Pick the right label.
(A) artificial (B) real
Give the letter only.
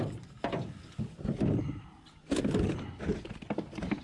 B